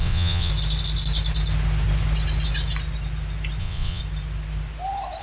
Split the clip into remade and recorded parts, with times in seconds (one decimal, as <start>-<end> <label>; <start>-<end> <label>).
0.0-0.5 remade; 0.5-3.6 recorded; 3.6-4.0 remade; 4.0-5.2 recorded

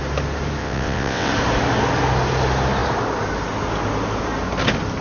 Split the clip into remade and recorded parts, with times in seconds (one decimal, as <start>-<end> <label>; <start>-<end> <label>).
0.0-0.6 recorded; 0.6-1.3 remade; 1.3-5.0 recorded

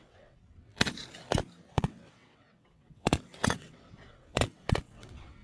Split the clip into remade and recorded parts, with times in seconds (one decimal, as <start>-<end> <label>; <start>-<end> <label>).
0.0-0.7 remade; 0.7-1.7 recorded; 1.7-5.4 remade

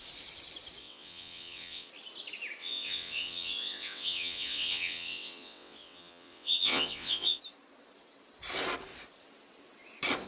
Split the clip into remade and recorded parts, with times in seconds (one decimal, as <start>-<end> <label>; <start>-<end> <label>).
0.0-0.8 recorded; 0.8-1.9 remade; 1.9-2.6 recorded; 2.6-7.4 remade; 7.4-10.3 recorded

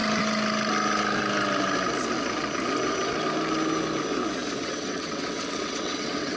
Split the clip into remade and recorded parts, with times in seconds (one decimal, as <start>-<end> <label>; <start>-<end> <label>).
0.0-4.6 recorded; 4.6-6.4 remade

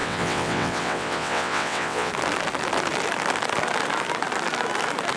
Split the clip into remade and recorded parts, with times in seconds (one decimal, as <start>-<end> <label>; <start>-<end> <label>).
0.0-2.1 remade; 2.1-5.2 recorded

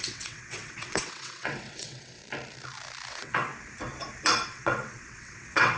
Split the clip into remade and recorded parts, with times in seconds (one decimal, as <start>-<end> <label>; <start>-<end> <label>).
0.0-2.2 remade; 2.2-3.1 recorded; 3.1-3.5 remade; 3.5-4.3 recorded; 4.3-5.8 remade

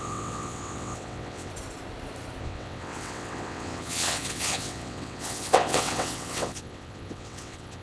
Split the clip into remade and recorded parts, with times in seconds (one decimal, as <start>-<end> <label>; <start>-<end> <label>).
0.0-1.5 remade; 1.5-2.4 recorded; 2.4-7.8 remade